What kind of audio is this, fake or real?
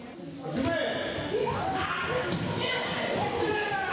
real